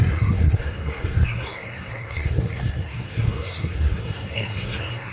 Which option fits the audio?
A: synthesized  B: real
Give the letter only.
A